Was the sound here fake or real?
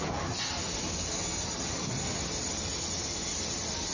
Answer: real